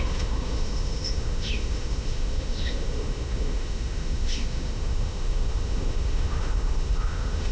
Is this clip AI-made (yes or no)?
yes